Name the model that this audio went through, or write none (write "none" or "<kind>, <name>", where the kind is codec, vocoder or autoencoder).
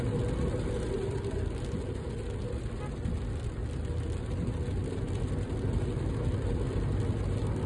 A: none